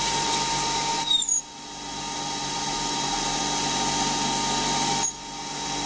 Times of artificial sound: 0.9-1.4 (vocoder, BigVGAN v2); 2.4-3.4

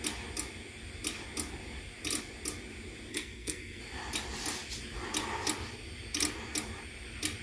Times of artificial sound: 3.1-3.8 (codec, SNAC)

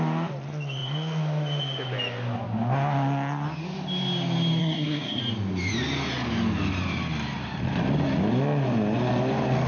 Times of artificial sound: 4.6-5.2 (codec, SNAC)

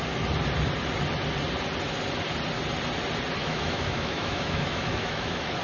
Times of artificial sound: 3.4-5.6 (autoencoder, DAC-VAE)

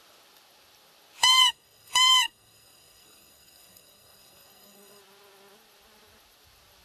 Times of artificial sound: 1.2-5.0 (codec, SNAC)

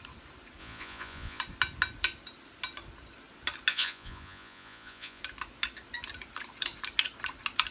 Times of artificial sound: 0.6-1.4 (vocoder, Vocos); 3.7-5.2

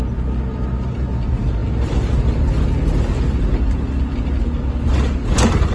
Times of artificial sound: none

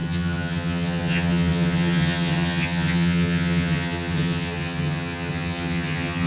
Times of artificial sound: 0.0-6.3 (vocoder, HiFi-GAN)